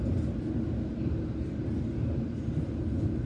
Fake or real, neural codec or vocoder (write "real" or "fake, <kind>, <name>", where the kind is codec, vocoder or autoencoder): real